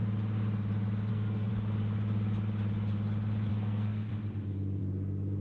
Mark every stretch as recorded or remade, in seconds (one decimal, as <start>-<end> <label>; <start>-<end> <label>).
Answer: 0.0-1.1 recorded; 1.1-1.5 remade; 1.5-3.5 recorded; 3.5-4.1 remade; 4.1-4.8 recorded; 4.8-5.4 remade